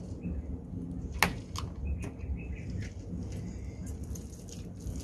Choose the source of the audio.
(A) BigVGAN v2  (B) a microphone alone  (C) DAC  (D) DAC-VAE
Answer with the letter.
B